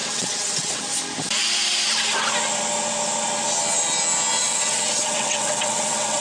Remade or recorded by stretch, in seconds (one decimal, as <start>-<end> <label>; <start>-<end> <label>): 0.0-0.8 remade; 0.8-4.4 recorded; 4.4-6.2 remade